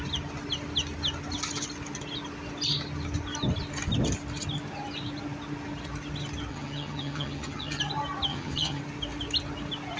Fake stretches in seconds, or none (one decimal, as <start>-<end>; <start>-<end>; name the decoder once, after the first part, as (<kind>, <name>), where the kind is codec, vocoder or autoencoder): 6.5-7.8 (vocoder, HiFi-GAN); 8.3-8.8